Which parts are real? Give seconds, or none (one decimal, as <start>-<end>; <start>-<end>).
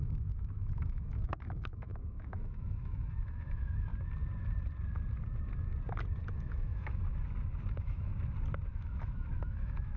3.9-6.3; 7.0-7.7; 8.1-8.7